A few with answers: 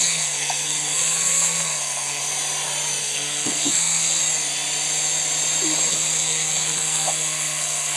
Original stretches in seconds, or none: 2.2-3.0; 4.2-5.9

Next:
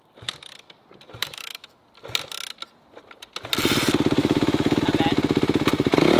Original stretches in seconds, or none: 0.0-1.2; 1.8-4.2; 4.8-6.2

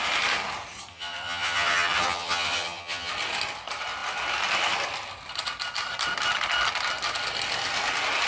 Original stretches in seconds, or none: 0.0-0.9; 3.1-8.3

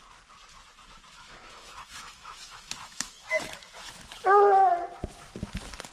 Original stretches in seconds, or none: 0.0-1.2; 4.7-5.9

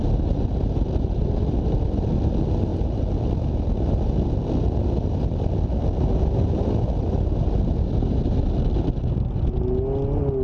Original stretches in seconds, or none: 0.0-10.4

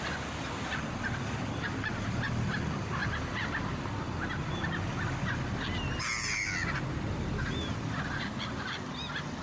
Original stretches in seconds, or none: 0.0-9.4